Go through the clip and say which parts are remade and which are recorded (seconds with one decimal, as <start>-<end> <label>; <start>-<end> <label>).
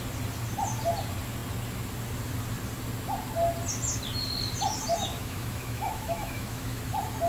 0.0-5.1 recorded; 5.1-6.8 remade; 6.8-7.3 recorded